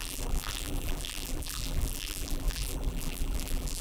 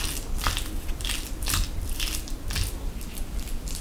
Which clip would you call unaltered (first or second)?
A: second